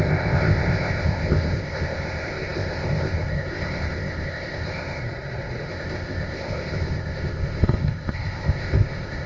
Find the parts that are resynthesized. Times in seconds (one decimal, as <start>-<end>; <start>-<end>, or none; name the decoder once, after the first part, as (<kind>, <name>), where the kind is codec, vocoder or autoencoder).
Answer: 0.0-5.0 (codec, ZipCodec); 5.7-9.3